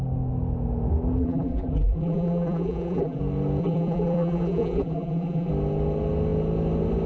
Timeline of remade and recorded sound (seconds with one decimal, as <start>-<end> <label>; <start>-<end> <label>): 0.0-1.2 recorded; 1.2-3.2 remade; 3.2-3.6 recorded; 3.6-5.5 remade; 5.5-7.1 recorded